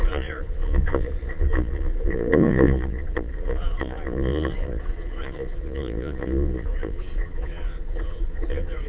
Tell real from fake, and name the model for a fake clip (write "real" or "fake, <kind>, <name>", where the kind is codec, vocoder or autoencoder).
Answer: fake, vocoder, Vocos